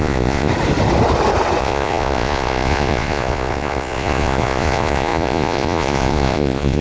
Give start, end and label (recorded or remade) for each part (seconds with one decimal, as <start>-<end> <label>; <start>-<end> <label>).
0.0-0.5 remade; 0.5-1.6 recorded; 1.6-6.8 remade